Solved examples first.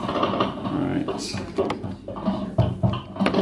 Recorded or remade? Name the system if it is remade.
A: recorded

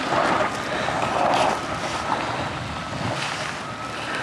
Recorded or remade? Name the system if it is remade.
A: recorded